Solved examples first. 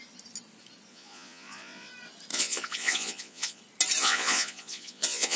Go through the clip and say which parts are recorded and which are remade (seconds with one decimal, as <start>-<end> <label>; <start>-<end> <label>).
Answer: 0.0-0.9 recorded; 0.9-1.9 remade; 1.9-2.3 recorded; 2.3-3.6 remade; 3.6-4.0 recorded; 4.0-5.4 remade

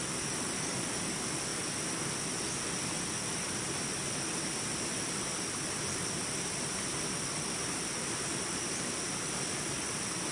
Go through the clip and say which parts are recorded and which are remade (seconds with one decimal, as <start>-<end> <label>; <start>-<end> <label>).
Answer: 0.0-10.3 recorded

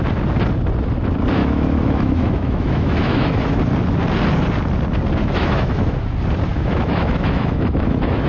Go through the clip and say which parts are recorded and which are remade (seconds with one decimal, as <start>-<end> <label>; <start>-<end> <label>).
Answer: 0.0-1.4 recorded; 1.4-3.6 remade; 3.6-5.2 recorded; 5.2-6.0 remade; 6.0-6.5 recorded; 6.5-8.3 remade

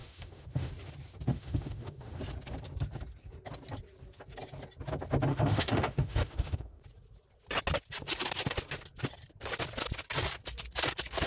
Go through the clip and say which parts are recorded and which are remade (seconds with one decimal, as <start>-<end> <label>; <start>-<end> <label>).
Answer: 0.0-0.7 remade; 0.7-1.3 recorded; 1.3-2.2 remade; 2.2-5.3 recorded; 5.3-6.8 remade; 6.8-11.3 recorded

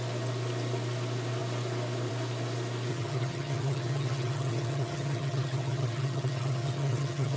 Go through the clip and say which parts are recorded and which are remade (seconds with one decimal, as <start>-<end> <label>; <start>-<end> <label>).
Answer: 0.0-2.9 recorded; 2.9-7.4 remade

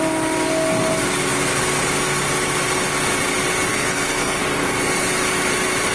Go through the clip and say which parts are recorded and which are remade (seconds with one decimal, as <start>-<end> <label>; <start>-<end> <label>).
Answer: 0.0-3.7 recorded; 3.7-4.4 remade; 4.4-5.9 recorded

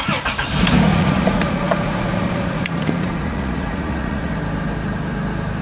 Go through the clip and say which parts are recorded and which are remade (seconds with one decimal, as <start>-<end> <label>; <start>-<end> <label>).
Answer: 0.0-0.9 recorded; 0.9-4.3 remade; 4.3-5.6 recorded